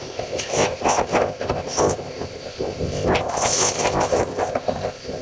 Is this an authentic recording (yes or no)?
no